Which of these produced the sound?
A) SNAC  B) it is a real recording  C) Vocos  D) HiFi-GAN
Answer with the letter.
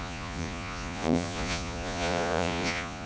C